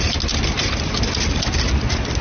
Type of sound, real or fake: real